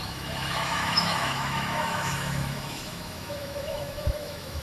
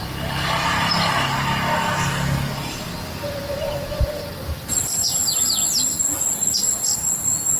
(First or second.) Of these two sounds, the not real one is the first